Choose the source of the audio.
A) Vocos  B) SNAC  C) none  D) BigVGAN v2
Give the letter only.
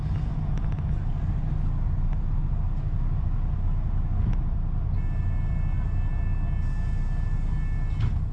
C